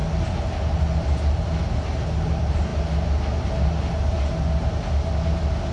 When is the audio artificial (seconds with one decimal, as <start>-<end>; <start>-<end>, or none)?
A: none